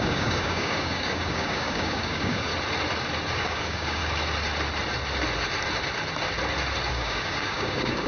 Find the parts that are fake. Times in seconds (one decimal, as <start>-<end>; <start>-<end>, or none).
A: 0.0-2.5; 3.3-4.0; 6.9-8.1